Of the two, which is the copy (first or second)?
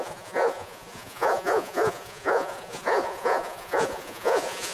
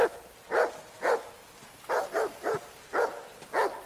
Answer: first